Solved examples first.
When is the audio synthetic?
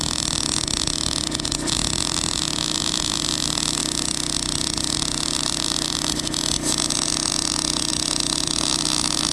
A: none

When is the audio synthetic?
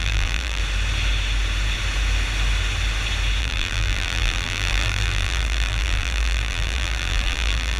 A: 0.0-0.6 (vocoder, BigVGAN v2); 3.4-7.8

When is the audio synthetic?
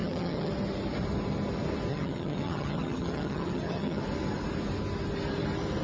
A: 0.0-0.5 (vocoder, HiFi-GAN); 1.9-4.0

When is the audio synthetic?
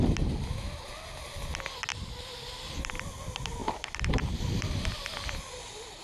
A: 3.6-5.5 (vocoder, BigVGAN v2)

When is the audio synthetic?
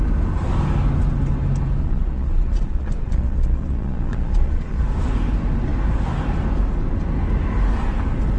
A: 1.8-4.8 (vocoder, Vocos)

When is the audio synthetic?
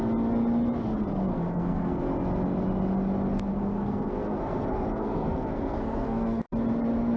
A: 1.3-2.0 (codec, SNAC); 3.5-6.4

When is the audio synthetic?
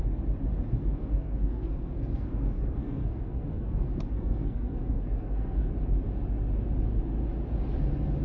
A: 0.8-5.7 (codec, SNAC)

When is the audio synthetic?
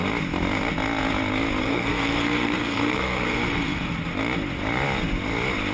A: 1.6-3.9 (codec, SNAC)